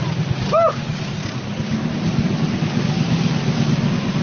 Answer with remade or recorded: recorded